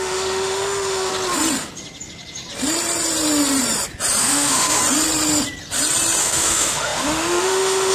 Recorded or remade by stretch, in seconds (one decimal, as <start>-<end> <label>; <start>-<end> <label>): 0.0-1.1 remade; 1.1-4.2 recorded; 4.2-4.8 remade; 4.8-6.2 recorded; 6.2-7.9 remade